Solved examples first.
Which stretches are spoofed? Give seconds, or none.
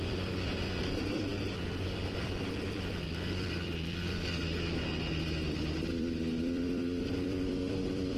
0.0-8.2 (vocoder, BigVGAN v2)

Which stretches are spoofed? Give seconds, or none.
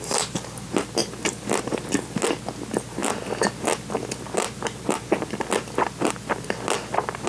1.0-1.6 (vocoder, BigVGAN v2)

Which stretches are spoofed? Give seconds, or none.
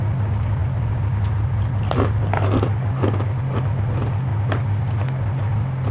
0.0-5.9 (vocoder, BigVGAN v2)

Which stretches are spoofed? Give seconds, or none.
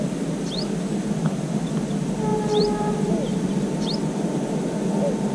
2.3-3.9 (vocoder, BigVGAN v2)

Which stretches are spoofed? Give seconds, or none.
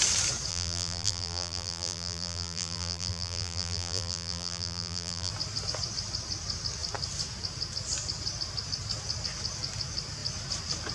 0.5-5.3 (vocoder, BigVGAN v2)